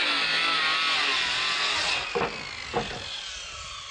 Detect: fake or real real